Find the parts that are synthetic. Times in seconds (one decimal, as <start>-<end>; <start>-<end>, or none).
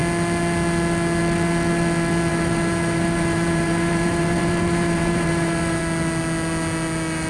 2.3-5.8